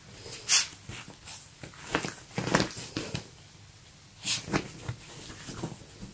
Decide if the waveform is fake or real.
real